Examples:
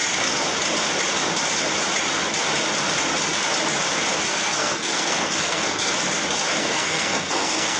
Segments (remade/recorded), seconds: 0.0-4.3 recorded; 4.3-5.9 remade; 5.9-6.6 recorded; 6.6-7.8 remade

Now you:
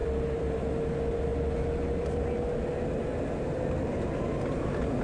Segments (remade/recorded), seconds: 0.0-0.5 remade; 0.5-5.0 recorded

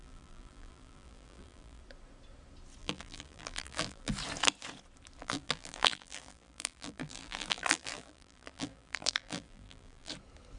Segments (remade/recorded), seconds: 0.0-1.8 remade; 1.8-2.8 recorded; 2.8-4.1 remade; 4.1-5.2 recorded; 5.2-10.1 remade; 10.1-10.6 recorded